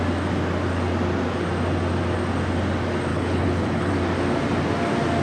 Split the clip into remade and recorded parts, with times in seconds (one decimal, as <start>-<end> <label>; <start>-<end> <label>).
0.0-3.1 recorded; 3.1-3.9 remade; 3.9-5.2 recorded